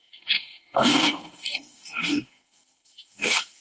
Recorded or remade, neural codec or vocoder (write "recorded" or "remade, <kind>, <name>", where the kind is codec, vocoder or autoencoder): remade, codec, DAC